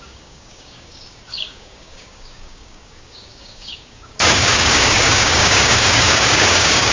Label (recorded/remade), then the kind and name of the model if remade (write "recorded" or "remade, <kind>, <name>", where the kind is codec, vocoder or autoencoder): remade, codec, DAC